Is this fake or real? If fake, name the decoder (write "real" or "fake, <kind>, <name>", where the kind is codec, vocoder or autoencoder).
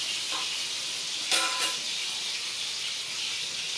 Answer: real